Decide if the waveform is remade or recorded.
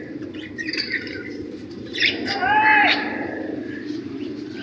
remade